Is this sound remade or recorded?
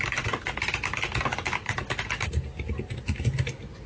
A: recorded